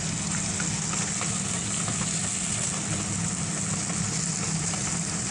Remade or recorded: recorded